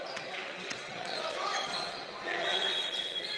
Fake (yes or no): yes